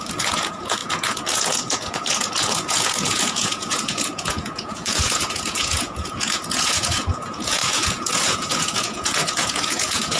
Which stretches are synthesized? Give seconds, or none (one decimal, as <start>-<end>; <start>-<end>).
0.0-10.2